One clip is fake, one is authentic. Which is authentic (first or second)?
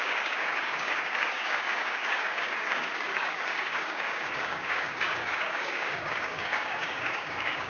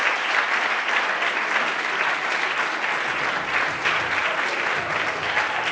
second